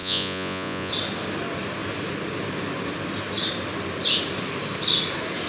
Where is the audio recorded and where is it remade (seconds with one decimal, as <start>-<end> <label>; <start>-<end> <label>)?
0.0-0.9 remade; 0.9-5.5 recorded